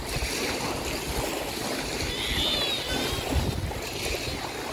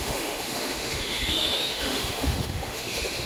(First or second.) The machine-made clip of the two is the second